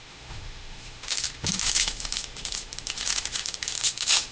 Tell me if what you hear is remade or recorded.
remade